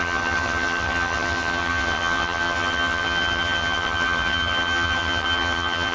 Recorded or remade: remade